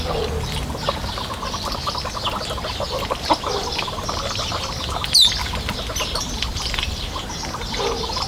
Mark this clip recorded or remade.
recorded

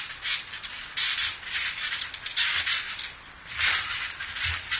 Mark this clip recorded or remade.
remade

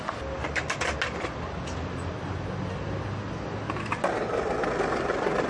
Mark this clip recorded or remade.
recorded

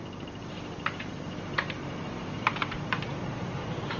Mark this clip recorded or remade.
remade